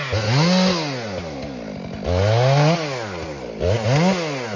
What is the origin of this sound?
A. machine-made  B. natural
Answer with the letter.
B